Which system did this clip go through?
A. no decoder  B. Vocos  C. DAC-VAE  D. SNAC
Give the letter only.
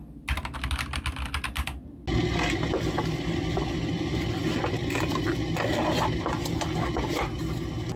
A